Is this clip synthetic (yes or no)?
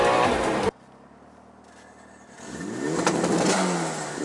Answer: no